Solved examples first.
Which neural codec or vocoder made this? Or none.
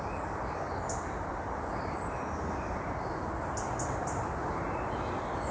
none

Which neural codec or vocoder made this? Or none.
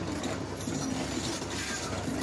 none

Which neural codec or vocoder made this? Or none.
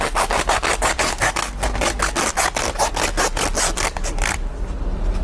none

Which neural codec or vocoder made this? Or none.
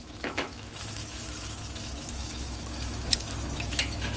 autoencoder, DAC-VAE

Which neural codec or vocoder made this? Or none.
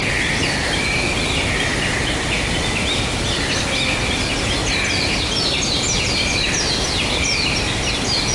none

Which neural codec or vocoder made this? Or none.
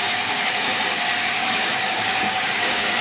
codec, DAC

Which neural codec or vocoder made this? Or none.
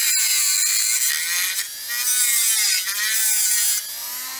none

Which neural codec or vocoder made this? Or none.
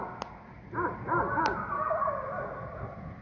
none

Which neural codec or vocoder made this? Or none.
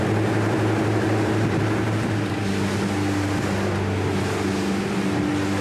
none